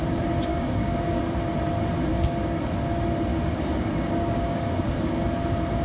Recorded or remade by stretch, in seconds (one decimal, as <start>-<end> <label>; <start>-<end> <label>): 0.0-0.5 recorded; 0.5-1.2 remade; 1.2-2.1 recorded; 2.1-2.6 remade; 2.6-3.3 recorded; 3.3-4.9 remade; 4.9-5.8 recorded